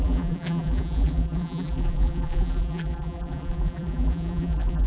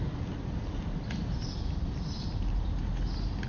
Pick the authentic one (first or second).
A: second